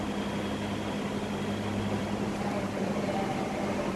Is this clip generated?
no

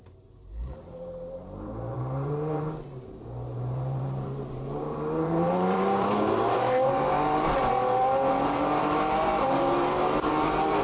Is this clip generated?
yes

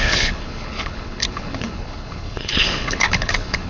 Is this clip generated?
yes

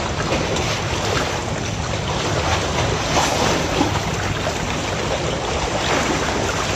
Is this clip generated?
no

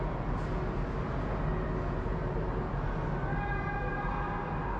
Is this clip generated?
no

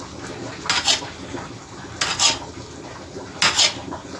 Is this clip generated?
no